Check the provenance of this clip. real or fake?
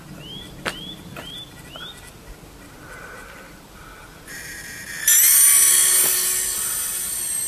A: real